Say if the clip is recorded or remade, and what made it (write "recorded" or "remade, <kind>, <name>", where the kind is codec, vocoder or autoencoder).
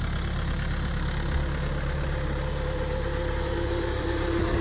recorded